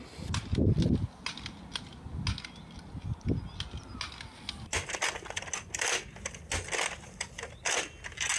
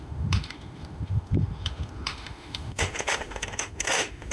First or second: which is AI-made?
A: second